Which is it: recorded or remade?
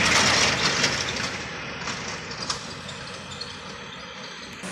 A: recorded